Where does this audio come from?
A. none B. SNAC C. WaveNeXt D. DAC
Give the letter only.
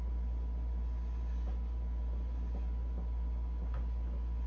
A